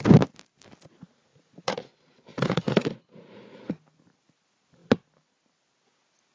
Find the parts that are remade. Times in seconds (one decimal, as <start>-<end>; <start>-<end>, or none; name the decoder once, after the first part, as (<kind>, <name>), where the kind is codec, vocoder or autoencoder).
1.3-1.9 (vocoder, Vocos); 2.3-3.6